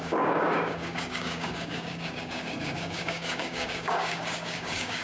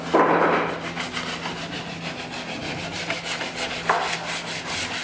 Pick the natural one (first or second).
second